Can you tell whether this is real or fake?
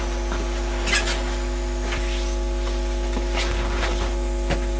real